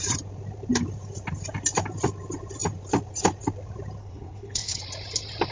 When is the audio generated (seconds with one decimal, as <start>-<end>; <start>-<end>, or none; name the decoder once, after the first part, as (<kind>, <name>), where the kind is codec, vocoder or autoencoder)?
4.0-4.8 (codec, HILCodec)